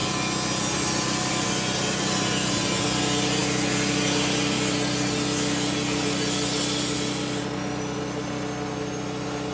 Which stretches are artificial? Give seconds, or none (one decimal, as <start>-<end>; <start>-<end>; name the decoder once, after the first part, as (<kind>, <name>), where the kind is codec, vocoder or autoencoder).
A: none